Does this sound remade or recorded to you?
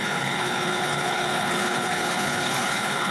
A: remade